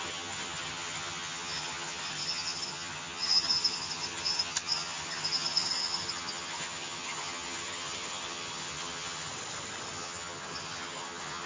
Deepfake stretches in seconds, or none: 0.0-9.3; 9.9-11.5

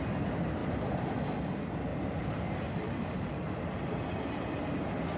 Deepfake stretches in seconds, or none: 0.6-1.3; 1.9-4.6

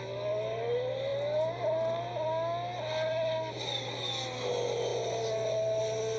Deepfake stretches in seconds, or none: none

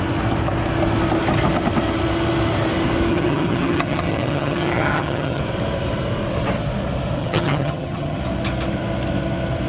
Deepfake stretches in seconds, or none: 3.1-5.4; 7.2-8.2

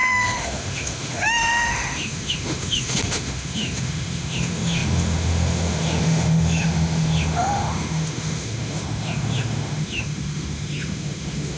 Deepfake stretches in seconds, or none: 0.0-11.6

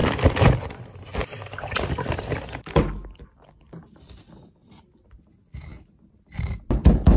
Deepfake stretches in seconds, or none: 0.0-0.6; 1.2-4.2; 5.7-7.2